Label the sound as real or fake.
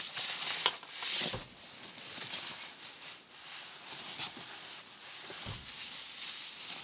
real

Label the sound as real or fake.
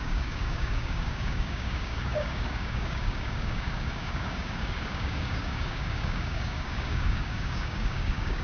fake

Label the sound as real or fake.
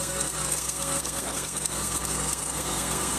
fake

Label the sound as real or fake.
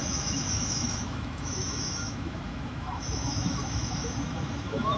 fake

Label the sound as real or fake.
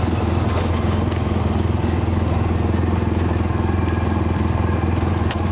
real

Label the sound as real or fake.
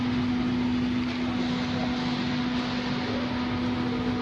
real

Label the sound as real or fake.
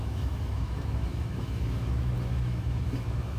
fake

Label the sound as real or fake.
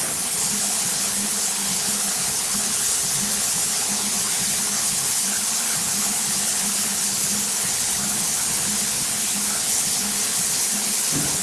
fake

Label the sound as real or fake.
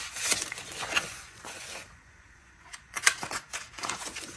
fake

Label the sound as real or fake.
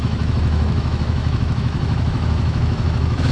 fake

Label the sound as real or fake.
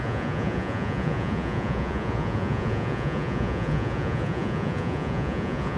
fake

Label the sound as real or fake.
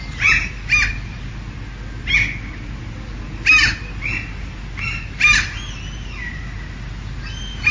real